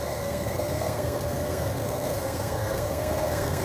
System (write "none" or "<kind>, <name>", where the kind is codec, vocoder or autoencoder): codec, SNAC